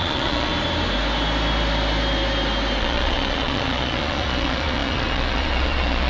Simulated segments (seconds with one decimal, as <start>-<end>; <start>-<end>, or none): 0.0-0.5; 2.8-6.1